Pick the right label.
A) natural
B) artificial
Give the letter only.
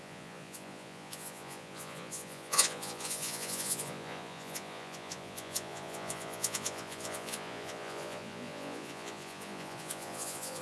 B